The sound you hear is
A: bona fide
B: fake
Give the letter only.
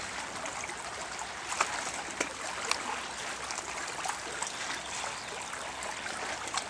A